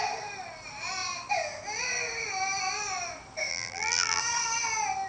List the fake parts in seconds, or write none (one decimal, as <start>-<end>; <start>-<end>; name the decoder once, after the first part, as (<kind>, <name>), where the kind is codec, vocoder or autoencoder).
3.5-4.2 (vocoder, BigVGAN v2)